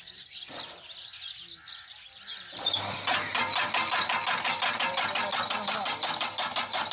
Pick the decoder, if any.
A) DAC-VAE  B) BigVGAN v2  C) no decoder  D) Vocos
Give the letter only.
C